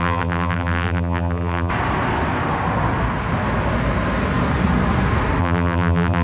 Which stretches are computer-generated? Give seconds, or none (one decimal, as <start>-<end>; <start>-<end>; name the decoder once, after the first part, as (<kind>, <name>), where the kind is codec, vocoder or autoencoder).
0.0-1.7 (vocoder, BigVGAN v2); 5.4-6.2